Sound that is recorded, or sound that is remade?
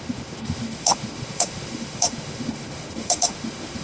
remade